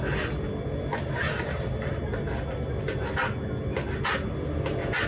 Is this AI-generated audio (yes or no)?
no